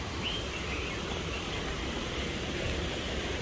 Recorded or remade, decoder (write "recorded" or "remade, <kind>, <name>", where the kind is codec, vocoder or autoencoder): recorded